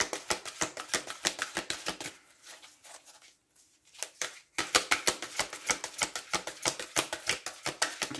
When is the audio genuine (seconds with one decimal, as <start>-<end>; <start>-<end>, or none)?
0.0-8.2